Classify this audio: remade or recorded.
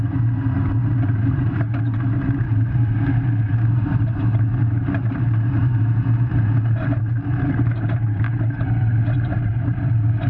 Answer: remade